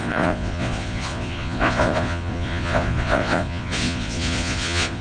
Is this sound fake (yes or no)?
yes